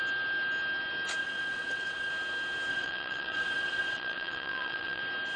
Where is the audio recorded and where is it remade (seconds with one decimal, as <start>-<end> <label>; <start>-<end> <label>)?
0.0-1.2 recorded; 1.2-2.1 remade; 2.1-2.7 recorded; 2.7-5.0 remade; 5.0-5.4 recorded